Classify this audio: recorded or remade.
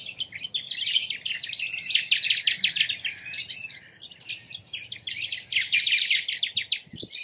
recorded